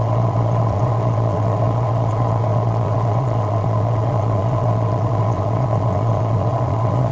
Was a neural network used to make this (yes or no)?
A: yes